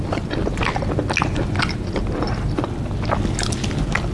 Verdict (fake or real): real